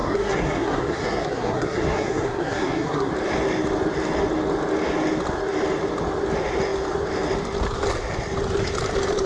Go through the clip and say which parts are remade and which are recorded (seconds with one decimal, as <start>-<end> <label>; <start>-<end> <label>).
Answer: 0.0-3.1 remade; 3.1-9.3 recorded